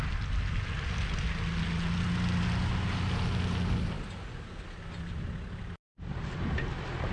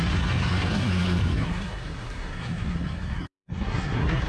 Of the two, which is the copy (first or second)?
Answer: second